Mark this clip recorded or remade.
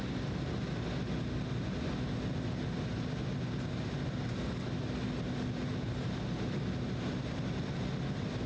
recorded